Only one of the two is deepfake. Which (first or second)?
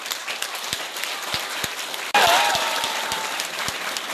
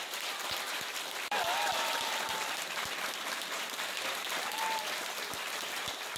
second